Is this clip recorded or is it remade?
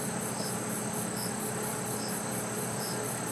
recorded